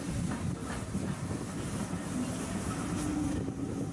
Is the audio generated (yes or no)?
no